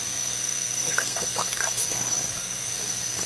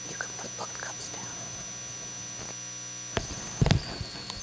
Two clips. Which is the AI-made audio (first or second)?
first